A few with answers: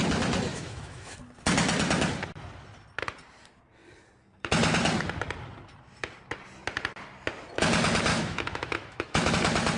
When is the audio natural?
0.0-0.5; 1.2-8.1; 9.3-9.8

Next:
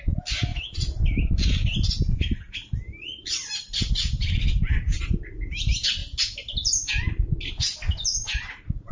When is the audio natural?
0.0-0.5; 4.7-8.9

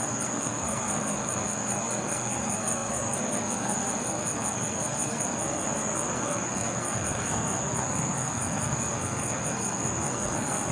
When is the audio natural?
none

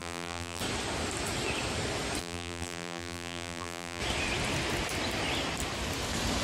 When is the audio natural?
0.6-2.2; 4.0-6.4